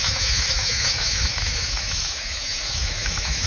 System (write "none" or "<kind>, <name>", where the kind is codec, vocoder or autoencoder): autoencoder, DAC-VAE